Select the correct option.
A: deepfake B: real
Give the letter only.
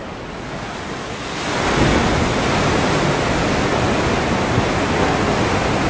B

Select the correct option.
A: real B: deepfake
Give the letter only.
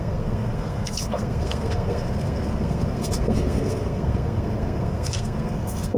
B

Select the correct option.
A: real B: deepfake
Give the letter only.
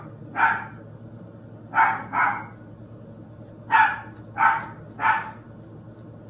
A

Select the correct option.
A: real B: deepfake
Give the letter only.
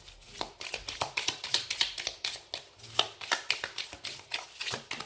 A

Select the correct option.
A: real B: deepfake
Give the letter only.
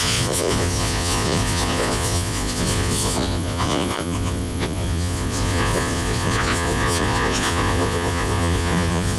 B